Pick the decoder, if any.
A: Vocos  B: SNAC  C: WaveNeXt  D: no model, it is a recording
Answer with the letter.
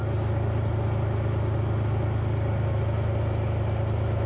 D